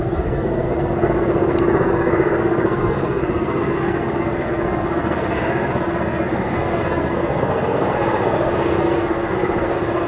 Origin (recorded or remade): remade